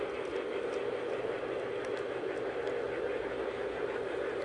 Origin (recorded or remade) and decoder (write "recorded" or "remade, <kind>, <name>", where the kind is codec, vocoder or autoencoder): recorded